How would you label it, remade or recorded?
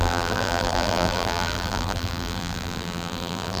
remade